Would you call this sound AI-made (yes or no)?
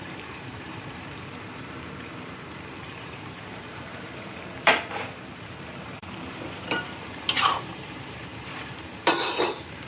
yes